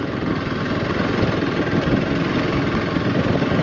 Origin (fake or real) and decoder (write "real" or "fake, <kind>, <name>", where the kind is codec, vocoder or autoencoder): real